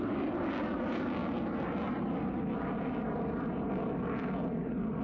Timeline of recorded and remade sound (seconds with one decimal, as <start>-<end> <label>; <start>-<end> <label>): 0.0-5.0 recorded